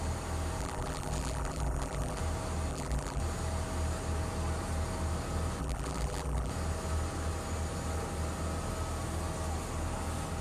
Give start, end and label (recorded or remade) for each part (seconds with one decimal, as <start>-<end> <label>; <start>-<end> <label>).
0.0-0.6 recorded; 0.6-2.2 remade; 2.2-2.7 recorded; 2.7-3.2 remade; 3.2-5.6 recorded; 5.6-6.5 remade; 6.5-10.4 recorded

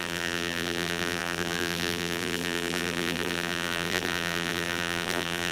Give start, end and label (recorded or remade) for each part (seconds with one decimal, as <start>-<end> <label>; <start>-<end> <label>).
0.0-5.5 remade

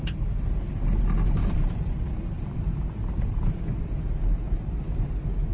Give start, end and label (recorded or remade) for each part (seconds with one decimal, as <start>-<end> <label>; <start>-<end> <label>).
0.0-1.4 recorded; 1.4-4.7 remade; 4.7-5.5 recorded

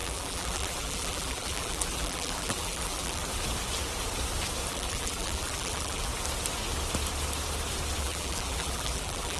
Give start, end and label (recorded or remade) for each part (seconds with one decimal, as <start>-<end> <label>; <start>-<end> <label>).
0.0-3.3 remade; 3.3-4.7 recorded; 4.7-6.1 remade; 6.1-8.0 recorded; 8.0-9.4 remade

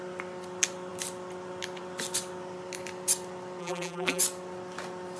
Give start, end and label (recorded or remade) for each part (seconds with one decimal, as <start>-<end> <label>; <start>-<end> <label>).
0.0-3.6 recorded; 3.6-4.2 remade; 4.2-5.2 recorded

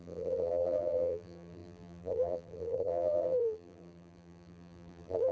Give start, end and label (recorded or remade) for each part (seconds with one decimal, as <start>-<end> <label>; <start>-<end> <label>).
0.0-5.3 remade

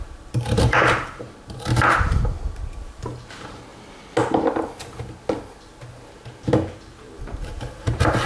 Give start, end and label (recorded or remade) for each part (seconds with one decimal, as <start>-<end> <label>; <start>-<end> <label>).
0.0-3.7 remade; 3.7-7.2 recorded; 7.2-8.3 remade